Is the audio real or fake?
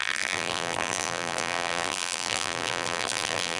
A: fake